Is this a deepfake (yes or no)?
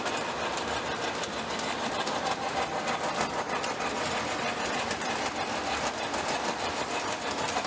yes